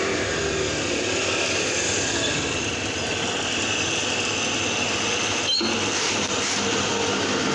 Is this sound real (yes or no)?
yes